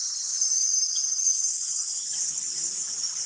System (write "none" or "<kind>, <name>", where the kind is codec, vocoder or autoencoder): vocoder, HiFi-GAN